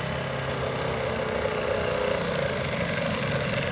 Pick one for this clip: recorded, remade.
recorded